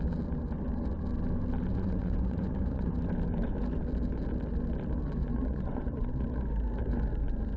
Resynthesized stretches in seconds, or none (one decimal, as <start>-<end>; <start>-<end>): 1.7-2.9; 5.2-6.1